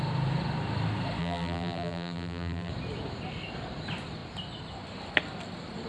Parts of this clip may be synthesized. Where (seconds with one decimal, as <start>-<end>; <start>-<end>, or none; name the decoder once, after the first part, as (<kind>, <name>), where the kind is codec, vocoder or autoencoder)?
1.2-2.7 (vocoder, BigVGAN v2)